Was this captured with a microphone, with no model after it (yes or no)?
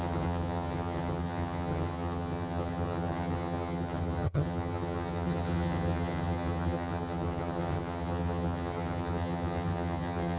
no